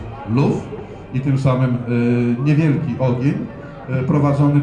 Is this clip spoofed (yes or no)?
no